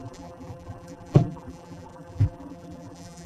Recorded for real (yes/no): no